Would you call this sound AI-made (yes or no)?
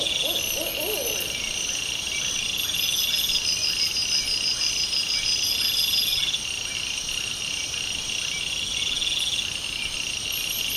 no